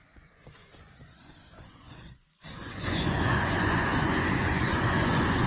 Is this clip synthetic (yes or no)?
yes